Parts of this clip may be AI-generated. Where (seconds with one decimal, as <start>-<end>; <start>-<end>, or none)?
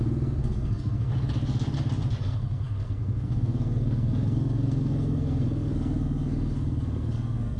0.0-1.1; 2.2-7.6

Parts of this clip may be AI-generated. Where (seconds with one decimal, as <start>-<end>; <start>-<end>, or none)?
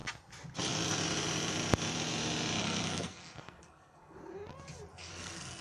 2.6-4.2; 4.9-5.6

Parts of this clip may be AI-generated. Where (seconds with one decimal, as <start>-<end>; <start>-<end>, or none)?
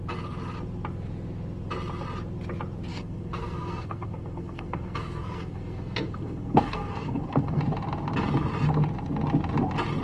2.9-7.6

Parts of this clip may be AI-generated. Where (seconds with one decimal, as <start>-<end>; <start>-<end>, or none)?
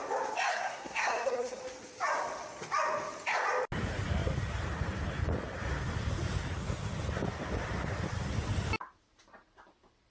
0.5-1.6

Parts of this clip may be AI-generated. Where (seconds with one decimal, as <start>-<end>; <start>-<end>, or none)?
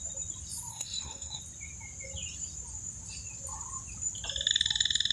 0.7-1.4